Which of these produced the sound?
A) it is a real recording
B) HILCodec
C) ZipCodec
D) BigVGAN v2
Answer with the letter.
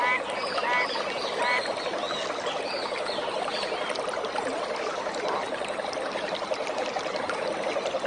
A